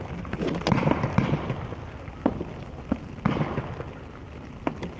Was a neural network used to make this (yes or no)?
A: no